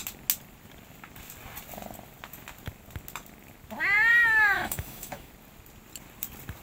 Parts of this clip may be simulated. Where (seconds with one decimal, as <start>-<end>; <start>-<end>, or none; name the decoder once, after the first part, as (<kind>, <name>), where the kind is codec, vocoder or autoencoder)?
4.1-5.3 (autoencoder, DAC-VAE)